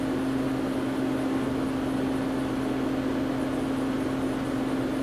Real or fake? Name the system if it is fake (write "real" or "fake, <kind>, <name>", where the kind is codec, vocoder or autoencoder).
real